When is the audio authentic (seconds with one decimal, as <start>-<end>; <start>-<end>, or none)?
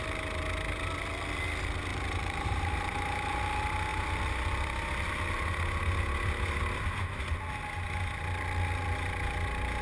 0.0-1.9; 3.3-9.8